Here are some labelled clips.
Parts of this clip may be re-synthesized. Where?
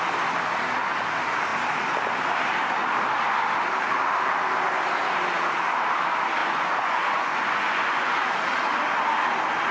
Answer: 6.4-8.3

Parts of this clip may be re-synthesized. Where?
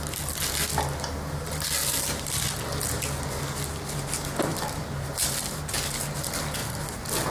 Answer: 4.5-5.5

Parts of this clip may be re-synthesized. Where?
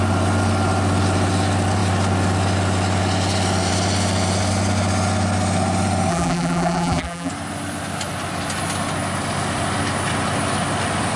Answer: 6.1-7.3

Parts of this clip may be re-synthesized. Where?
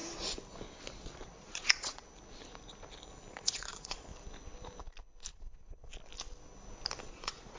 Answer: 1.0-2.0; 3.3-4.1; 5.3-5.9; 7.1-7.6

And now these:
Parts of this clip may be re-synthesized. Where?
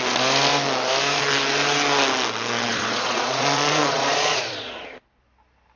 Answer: 2.7-5.0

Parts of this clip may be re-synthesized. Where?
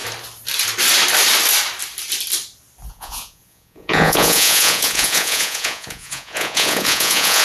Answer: 2.9-7.4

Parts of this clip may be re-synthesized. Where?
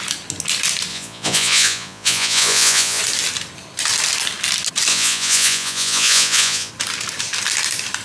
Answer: 0.9-3.0; 4.9-6.7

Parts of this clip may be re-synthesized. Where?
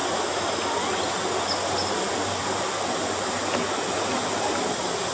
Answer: none